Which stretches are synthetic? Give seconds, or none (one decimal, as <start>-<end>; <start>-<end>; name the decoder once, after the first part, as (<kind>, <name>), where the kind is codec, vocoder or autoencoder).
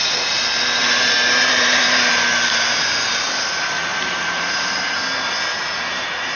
0.8-2.1 (vocoder, BigVGAN v2); 3.9-4.8; 5.5-6.4